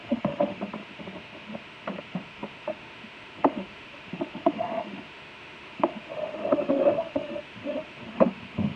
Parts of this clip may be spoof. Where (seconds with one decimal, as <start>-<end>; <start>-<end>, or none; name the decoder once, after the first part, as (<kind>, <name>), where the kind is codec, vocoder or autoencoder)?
0.0-8.8 (autoencoder, DAC-VAE)